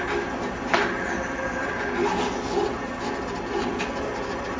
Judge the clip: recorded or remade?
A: recorded